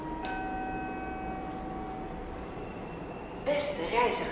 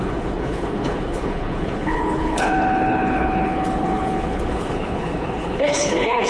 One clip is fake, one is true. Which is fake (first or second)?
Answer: second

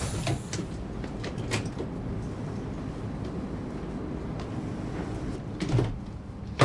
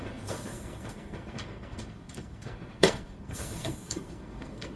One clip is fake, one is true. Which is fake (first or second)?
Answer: second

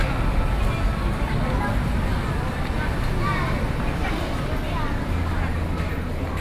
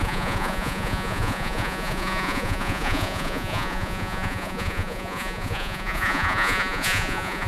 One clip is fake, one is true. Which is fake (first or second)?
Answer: second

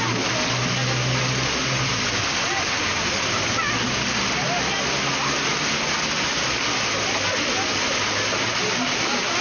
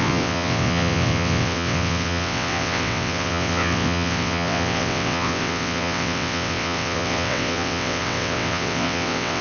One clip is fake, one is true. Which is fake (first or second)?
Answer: second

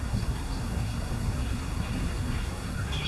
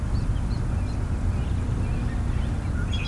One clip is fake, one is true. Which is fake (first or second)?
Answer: first